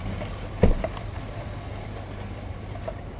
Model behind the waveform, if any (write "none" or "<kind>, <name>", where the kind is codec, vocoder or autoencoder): none